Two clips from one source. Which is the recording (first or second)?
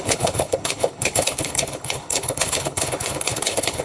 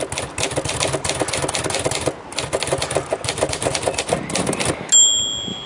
second